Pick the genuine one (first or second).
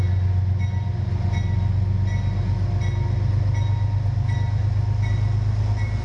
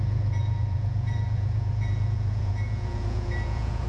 first